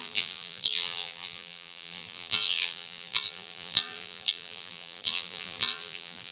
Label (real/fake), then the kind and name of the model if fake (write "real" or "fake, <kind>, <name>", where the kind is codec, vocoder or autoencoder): fake, vocoder, BigVGAN v2